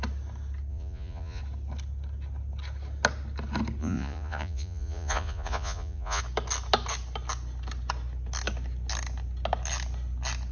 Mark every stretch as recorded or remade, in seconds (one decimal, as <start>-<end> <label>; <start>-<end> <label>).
0.0-0.7 recorded; 0.7-1.4 remade; 1.4-3.8 recorded; 3.8-6.2 remade; 6.2-10.5 recorded